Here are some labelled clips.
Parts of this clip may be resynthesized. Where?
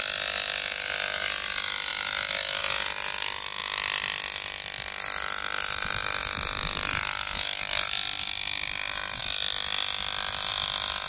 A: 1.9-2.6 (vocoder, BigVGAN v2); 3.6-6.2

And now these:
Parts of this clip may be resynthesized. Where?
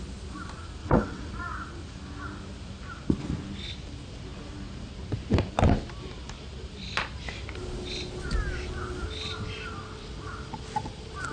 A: 0.8-1.3 (vocoder, WaveNeXt)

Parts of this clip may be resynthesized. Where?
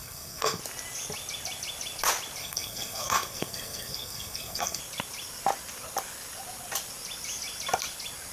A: 0.0-0.6 (codec, SNAC); 2.4-4.8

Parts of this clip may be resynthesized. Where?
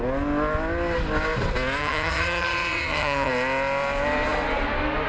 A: 1.8-3.3 (vocoder, HiFi-GAN)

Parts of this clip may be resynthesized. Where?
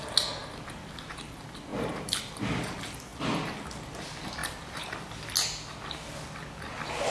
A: 1.7-2.2 (vocoder, BigVGAN v2); 4.4-5.1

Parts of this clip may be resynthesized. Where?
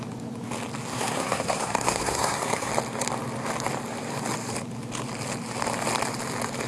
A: 0.9-2.7 (codec, SNAC)